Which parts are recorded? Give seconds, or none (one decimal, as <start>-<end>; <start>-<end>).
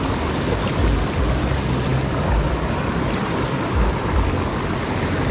0.0-5.3